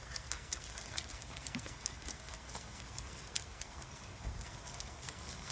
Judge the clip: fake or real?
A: fake